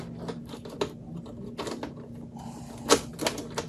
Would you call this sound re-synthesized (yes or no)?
no